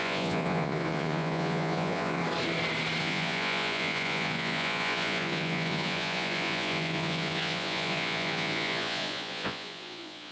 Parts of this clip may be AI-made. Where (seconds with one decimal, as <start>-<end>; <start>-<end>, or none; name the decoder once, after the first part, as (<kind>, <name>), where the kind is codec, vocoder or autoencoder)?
0.0-2.2 (vocoder, Vocos); 3.0-10.3